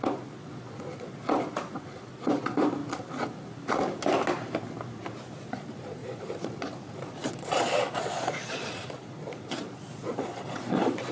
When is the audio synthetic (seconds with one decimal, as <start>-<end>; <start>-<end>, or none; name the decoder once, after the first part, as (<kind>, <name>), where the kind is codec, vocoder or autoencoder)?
0.0-2.8 (vocoder, Vocos); 5.5-11.1